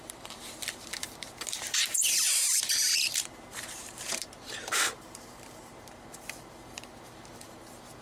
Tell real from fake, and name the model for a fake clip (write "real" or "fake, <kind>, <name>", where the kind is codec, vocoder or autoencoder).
fake, vocoder, BigVGAN v2